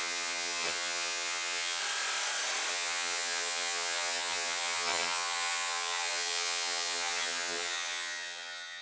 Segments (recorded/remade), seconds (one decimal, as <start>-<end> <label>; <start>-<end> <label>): 0.0-1.8 remade; 1.8-2.7 recorded; 2.7-8.8 remade